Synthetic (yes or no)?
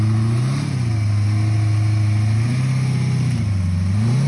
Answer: no